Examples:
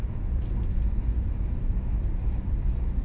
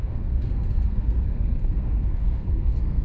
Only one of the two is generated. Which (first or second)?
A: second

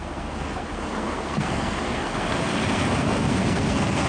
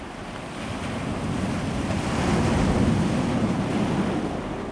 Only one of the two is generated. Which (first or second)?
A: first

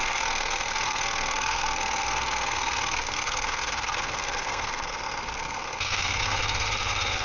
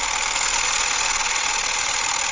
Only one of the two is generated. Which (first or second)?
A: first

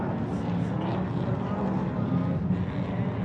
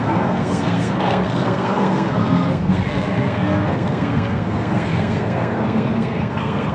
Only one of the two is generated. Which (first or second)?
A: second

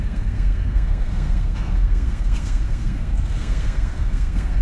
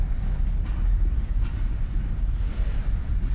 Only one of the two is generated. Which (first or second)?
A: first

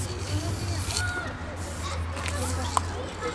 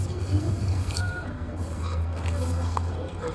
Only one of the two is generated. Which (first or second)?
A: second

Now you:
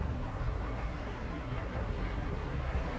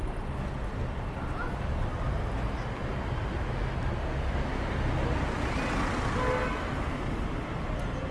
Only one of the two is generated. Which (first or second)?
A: first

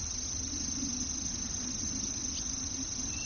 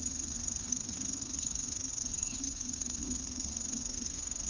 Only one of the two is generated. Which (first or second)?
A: second